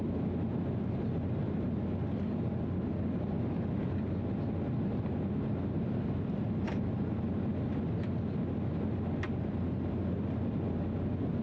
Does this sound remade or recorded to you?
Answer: recorded